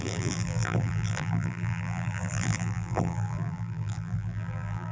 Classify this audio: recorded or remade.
remade